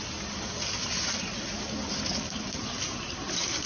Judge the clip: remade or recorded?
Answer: recorded